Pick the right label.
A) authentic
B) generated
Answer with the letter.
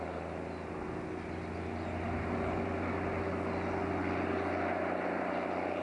A